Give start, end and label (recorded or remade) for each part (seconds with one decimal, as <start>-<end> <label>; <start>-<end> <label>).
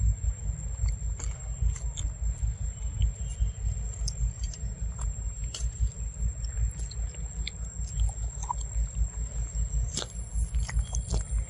0.0-4.4 recorded; 4.4-5.9 remade; 5.9-11.5 recorded